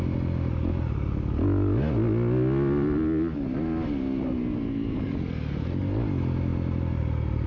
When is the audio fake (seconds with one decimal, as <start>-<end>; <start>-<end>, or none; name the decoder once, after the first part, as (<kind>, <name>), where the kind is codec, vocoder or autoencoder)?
4.3-5.1 (vocoder, BigVGAN v2)